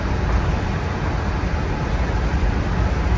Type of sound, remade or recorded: recorded